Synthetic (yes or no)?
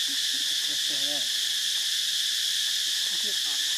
no